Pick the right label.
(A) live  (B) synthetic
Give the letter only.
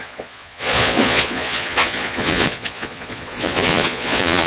B